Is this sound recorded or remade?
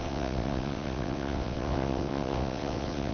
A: remade